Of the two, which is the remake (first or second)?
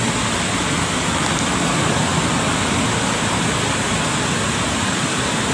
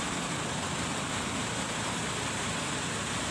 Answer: second